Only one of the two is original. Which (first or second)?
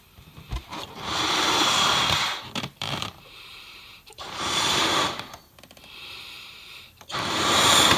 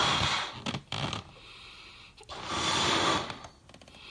second